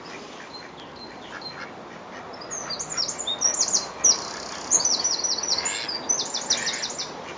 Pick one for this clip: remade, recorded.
recorded